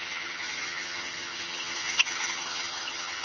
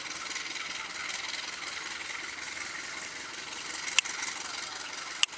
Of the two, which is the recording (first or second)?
second